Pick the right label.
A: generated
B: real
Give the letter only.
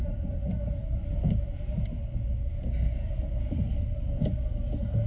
B